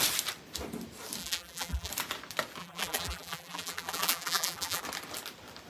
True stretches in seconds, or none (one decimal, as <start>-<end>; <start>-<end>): 0.0-1.2; 1.9-2.6; 4.8-5.7